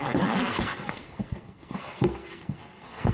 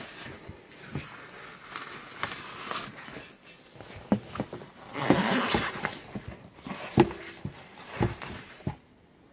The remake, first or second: first